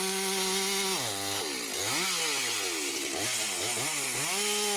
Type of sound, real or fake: real